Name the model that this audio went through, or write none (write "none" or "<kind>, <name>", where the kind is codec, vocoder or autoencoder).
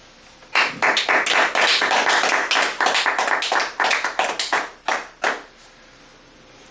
none